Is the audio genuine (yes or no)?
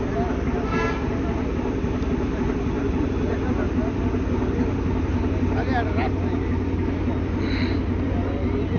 yes